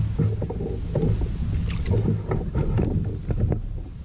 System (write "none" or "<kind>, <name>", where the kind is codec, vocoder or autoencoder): none